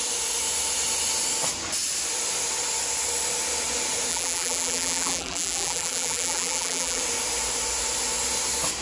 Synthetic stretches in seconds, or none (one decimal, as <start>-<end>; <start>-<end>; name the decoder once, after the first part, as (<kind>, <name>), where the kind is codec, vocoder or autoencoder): 4.1-7.0 (vocoder, BigVGAN v2)